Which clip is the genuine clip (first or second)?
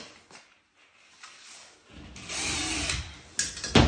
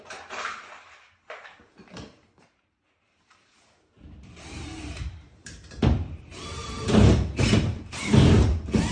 first